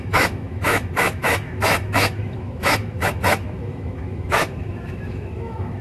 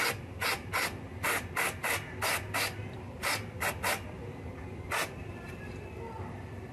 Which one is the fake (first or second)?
first